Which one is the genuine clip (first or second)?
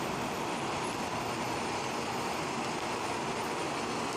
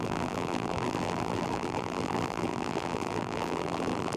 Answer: first